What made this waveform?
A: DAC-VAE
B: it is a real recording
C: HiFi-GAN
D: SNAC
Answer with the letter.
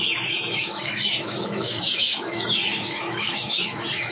A